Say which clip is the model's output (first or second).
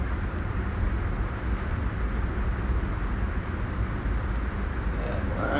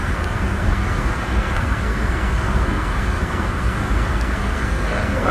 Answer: second